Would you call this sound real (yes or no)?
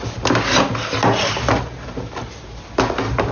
yes